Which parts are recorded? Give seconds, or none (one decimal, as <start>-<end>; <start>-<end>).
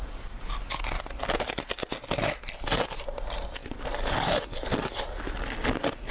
0.0-3.6; 4.7-6.1